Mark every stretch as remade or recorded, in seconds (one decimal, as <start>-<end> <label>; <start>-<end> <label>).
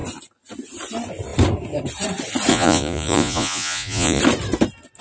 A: 0.0-2.5 recorded; 2.5-4.2 remade; 4.2-5.0 recorded